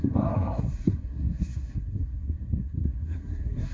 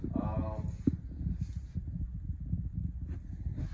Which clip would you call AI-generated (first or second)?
first